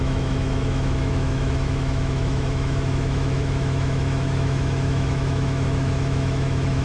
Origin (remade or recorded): remade